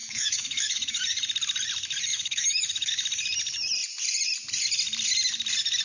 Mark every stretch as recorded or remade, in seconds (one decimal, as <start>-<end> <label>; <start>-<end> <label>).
0.0-1.0 remade; 1.0-2.1 recorded; 2.1-2.9 remade; 2.9-5.8 recorded